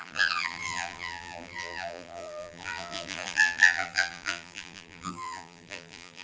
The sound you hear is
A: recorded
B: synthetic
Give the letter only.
B